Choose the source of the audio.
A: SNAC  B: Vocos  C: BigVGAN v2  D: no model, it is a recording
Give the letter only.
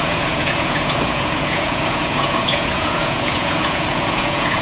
B